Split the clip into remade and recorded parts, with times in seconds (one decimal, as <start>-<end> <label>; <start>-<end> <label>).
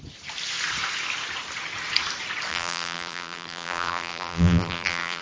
0.0-2.5 recorded; 2.5-5.2 remade